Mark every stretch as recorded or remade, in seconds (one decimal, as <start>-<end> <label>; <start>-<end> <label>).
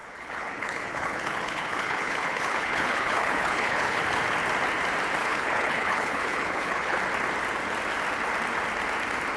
0.0-4.0 remade; 4.0-5.2 recorded; 5.2-7.0 remade; 7.0-9.4 recorded